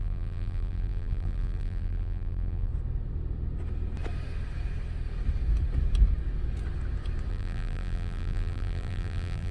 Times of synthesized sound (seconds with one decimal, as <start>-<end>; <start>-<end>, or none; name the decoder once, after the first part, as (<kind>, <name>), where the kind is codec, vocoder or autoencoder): 0.0-2.7 (vocoder, BigVGAN v2); 7.3-9.5